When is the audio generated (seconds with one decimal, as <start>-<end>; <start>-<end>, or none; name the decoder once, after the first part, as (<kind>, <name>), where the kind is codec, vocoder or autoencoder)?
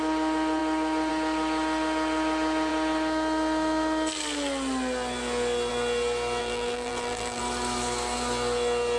6.4-7.4 (vocoder, BigVGAN v2)